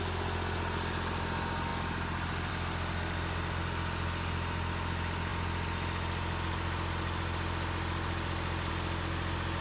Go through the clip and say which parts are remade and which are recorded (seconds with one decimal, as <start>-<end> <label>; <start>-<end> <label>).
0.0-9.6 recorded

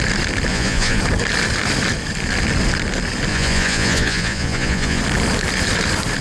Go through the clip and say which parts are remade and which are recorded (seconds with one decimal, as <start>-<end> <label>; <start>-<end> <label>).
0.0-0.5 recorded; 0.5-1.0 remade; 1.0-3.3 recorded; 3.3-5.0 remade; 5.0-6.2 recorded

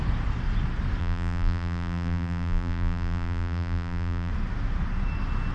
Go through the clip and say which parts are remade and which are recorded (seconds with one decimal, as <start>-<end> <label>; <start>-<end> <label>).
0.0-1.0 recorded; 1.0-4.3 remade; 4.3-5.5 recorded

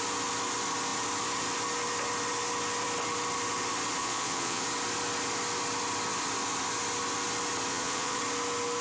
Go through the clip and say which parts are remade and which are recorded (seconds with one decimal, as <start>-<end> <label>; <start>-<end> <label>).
0.0-4.0 recorded; 4.0-4.6 remade; 4.6-7.7 recorded; 7.7-8.2 remade; 8.2-8.8 recorded

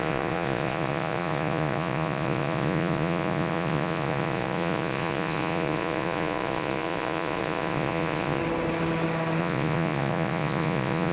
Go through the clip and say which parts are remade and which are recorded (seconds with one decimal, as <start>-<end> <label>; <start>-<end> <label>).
0.0-8.4 remade; 8.4-9.4 recorded; 9.4-11.1 remade

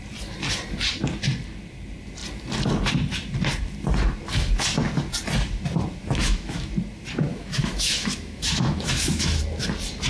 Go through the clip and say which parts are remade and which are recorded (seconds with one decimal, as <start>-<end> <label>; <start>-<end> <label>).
0.0-6.0 recorded; 6.0-6.7 remade; 6.7-7.3 recorded; 7.3-9.4 remade; 9.4-10.1 recorded